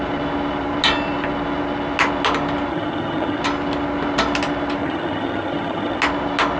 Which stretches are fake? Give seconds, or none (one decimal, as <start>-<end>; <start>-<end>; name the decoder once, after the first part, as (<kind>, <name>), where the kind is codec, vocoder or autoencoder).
2.7-3.4 (vocoder, HiFi-GAN); 4.8-6.0